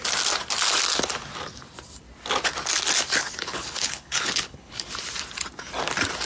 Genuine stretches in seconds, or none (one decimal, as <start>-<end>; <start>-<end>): 0.0-3.2; 4.9-6.2